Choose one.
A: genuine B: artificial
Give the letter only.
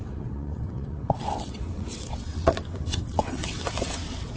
B